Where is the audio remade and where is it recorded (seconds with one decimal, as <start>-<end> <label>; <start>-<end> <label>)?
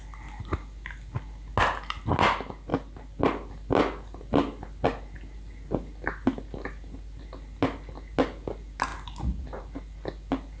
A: 0.0-10.6 recorded